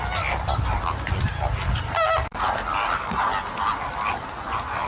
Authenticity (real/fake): real